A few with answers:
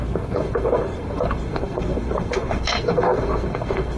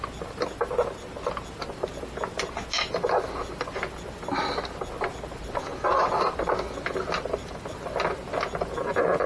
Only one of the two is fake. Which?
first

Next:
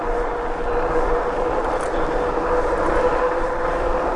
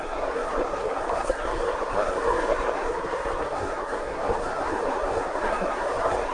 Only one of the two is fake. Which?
second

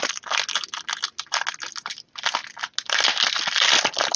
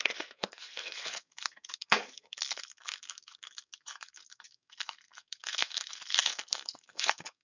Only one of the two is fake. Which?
second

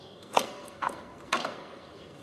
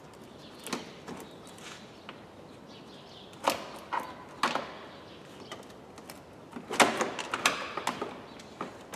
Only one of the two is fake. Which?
first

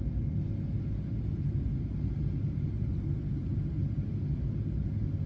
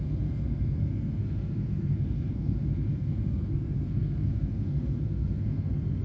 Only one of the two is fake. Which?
second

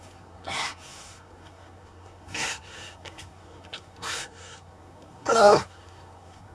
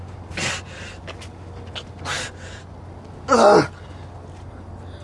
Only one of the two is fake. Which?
first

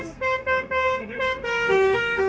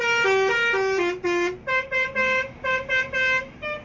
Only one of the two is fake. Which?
first